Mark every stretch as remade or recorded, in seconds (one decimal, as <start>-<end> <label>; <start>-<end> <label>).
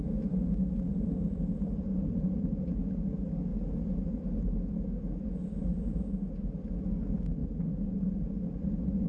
0.0-9.1 recorded